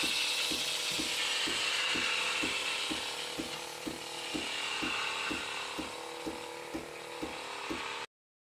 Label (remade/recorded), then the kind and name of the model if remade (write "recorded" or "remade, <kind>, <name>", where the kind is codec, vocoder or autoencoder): recorded